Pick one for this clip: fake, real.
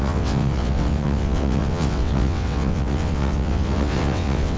fake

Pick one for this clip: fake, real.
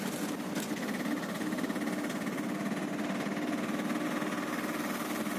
real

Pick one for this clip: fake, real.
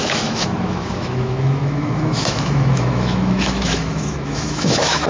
fake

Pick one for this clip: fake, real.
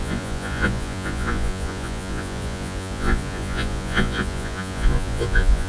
fake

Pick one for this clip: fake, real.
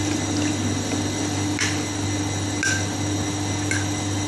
real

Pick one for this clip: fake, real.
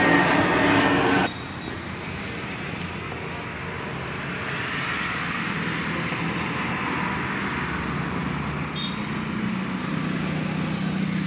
real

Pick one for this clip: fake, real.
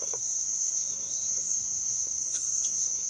fake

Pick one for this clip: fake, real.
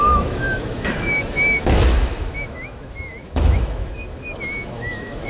fake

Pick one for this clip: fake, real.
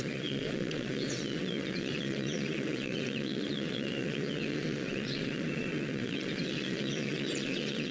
fake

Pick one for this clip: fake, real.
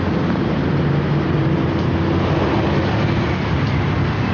real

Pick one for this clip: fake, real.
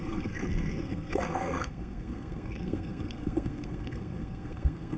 fake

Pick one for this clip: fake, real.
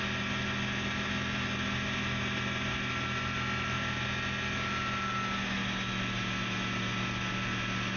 real